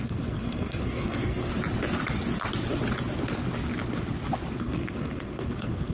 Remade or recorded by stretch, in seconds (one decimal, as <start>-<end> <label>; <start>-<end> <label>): 0.0-1.5 remade; 1.5-4.6 recorded; 4.6-5.9 remade